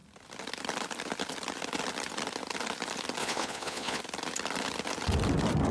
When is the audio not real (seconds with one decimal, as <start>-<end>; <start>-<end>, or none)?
3.2-4.0

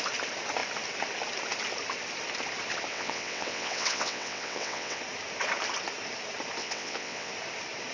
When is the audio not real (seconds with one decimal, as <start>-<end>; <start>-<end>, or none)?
2.9-5.0; 6.6-7.3

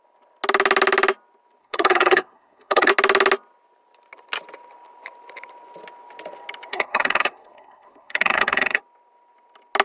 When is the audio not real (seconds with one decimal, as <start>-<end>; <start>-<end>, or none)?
1.6-2.9; 6.7-8.8

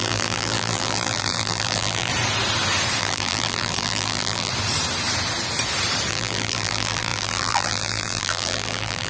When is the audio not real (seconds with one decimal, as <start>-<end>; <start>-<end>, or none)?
0.0-2.1; 3.0-4.5; 6.1-9.1